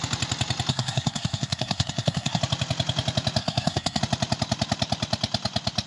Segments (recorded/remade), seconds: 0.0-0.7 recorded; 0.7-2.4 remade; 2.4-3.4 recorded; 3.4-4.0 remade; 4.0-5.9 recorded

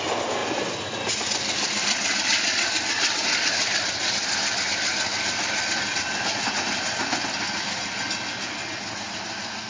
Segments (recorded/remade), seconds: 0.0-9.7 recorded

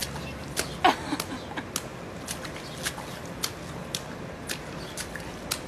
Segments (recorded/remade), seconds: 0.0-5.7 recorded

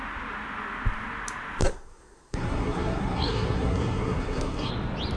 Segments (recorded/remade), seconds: 0.0-1.6 recorded; 1.6-4.7 remade; 4.7-5.2 recorded

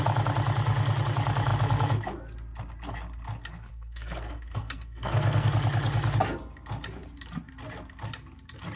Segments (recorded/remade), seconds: 0.0-3.7 recorded; 3.7-5.5 remade; 5.5-8.8 recorded